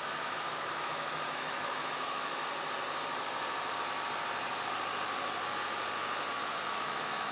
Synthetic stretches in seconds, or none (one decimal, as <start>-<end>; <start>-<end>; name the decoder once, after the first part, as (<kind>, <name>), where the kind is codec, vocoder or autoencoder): 0.0-2.4 (autoencoder, DAC-VAE); 6.7-7.3